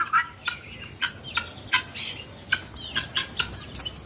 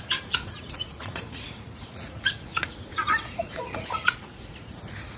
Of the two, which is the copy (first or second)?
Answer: second